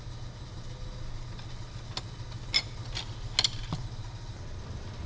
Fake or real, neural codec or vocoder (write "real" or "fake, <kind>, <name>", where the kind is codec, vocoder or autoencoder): real